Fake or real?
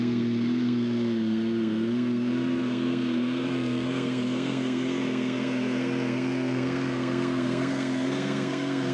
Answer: fake